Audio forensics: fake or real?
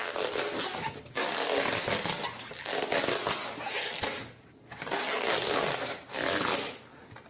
real